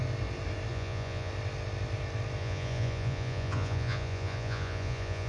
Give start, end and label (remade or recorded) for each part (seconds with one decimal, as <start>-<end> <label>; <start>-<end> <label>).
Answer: 0.0-0.7 recorded; 0.7-1.3 remade; 1.3-2.4 recorded; 2.4-5.3 remade